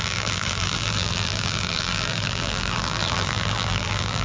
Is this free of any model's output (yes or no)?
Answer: no